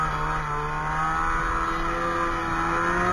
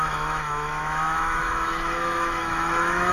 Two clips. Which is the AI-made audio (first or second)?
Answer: second